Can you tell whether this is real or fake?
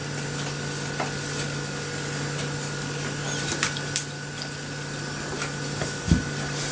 real